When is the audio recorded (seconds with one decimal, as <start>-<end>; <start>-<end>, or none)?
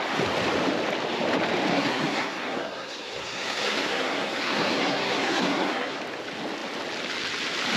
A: 0.0-1.7; 6.0-7.8